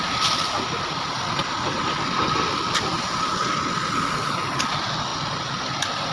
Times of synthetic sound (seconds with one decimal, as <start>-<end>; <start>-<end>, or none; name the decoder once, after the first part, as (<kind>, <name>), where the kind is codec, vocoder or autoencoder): none